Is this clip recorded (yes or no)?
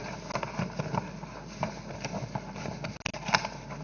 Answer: yes